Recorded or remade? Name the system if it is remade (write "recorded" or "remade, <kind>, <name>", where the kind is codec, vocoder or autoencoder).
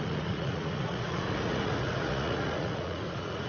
remade, vocoder, Vocos